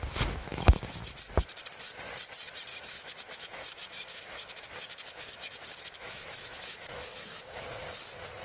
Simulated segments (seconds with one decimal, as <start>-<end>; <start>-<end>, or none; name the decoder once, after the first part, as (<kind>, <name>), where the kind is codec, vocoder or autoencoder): 0.4-1.2 (autoencoder, DAC-VAE); 2.7-7.7